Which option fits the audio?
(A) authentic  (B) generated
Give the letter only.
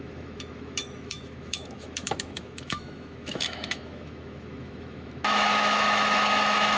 B